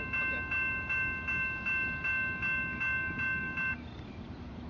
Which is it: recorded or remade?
recorded